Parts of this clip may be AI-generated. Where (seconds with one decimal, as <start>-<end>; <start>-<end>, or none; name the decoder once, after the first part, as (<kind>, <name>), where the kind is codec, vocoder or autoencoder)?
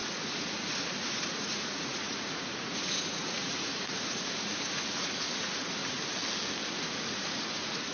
0.0-5.8 (vocoder, Vocos); 6.7-7.9